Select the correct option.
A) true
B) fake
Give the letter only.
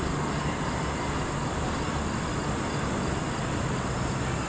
A